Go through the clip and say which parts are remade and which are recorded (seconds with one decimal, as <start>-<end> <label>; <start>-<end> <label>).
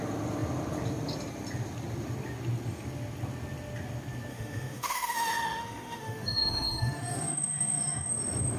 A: 0.0-4.3 recorded; 4.3-8.1 remade; 8.1-8.6 recorded